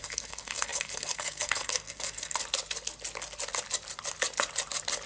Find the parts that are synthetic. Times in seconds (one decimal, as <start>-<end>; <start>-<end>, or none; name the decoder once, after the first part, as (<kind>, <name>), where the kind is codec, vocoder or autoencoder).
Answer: 0.0-2.4 (codec, SNAC)